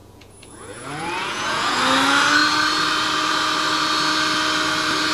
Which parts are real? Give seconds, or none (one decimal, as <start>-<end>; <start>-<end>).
1.8-5.1